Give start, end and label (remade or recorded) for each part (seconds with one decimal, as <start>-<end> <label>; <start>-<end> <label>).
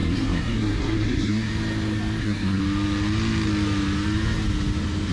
0.0-1.5 remade; 1.5-2.2 recorded; 2.2-2.6 remade; 2.6-5.1 recorded